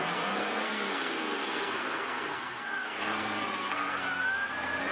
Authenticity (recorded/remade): remade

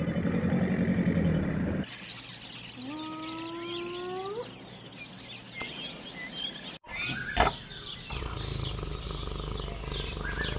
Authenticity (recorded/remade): recorded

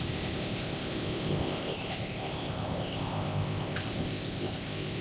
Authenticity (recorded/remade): remade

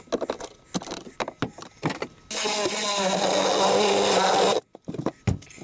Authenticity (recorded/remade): recorded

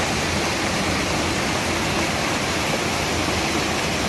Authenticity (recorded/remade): recorded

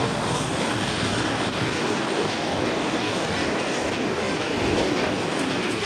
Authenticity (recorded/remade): remade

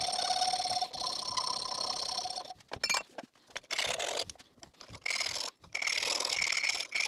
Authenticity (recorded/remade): recorded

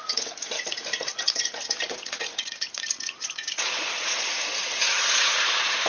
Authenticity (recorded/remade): remade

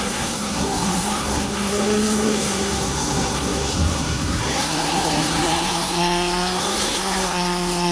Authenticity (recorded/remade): remade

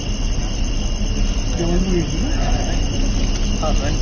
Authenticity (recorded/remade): recorded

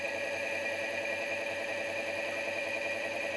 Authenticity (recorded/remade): remade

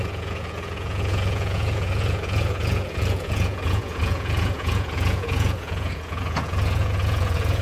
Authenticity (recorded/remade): remade